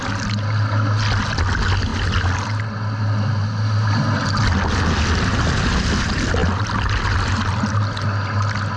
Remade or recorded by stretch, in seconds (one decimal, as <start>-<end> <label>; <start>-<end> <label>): 0.0-8.8 recorded